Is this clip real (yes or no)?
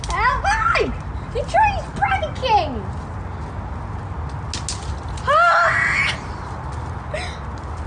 yes